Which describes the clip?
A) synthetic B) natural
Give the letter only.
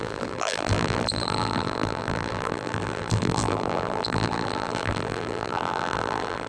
A